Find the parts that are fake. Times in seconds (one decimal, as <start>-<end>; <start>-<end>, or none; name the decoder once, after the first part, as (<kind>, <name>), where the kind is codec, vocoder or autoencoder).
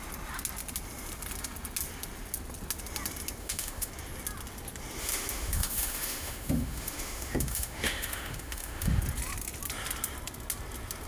3.4-3.9 (autoencoder, DAC-VAE); 5.0-9.0